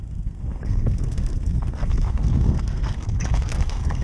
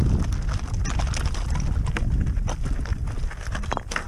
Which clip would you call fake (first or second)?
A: first